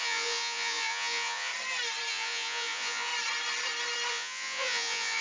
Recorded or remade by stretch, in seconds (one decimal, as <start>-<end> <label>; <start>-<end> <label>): 0.0-1.5 remade; 1.5-2.1 recorded; 2.1-3.1 remade; 3.1-4.1 recorded; 4.1-5.2 remade